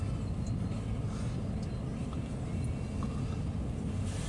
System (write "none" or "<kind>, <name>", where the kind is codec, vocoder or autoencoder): none